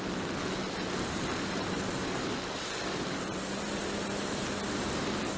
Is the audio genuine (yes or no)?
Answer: no